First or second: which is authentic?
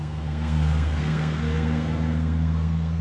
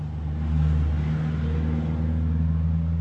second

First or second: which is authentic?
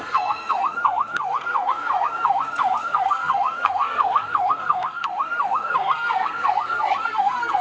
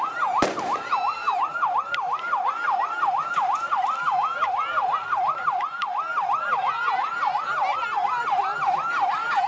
second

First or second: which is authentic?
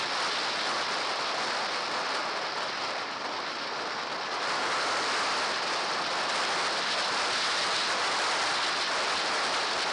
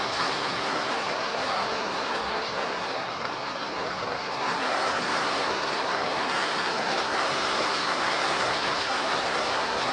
first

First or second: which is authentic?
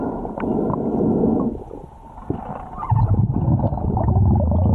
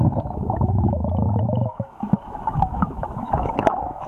first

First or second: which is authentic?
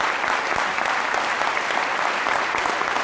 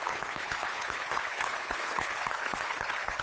first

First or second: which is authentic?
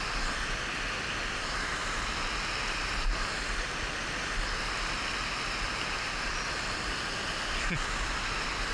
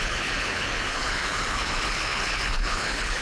first